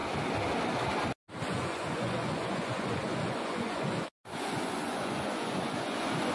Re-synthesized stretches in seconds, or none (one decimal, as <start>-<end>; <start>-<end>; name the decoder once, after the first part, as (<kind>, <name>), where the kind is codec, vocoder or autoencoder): 1.4-6.3 (vocoder, Vocos)